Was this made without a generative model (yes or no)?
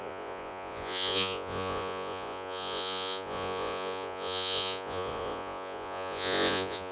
no